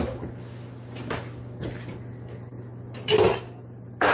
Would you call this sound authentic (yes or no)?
yes